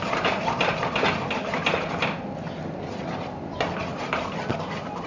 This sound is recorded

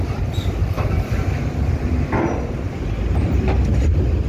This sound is recorded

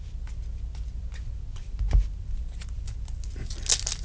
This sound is recorded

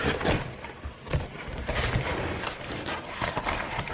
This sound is recorded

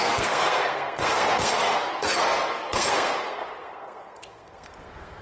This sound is remade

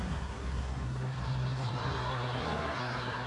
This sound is remade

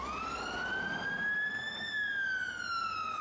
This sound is recorded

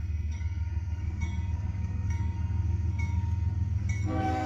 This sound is remade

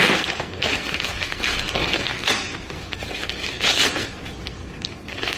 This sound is remade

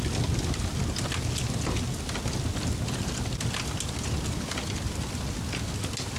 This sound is recorded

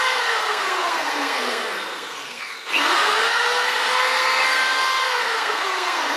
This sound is remade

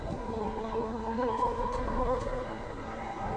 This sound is remade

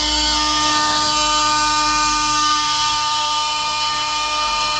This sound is remade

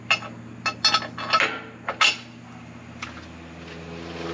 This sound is recorded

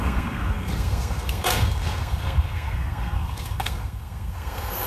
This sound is remade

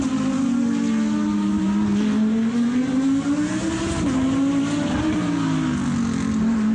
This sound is recorded